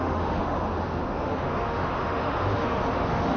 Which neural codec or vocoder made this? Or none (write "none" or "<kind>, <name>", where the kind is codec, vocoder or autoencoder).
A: autoencoder, DAC-VAE